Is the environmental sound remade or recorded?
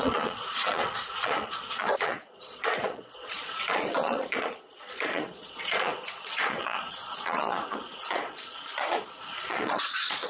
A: remade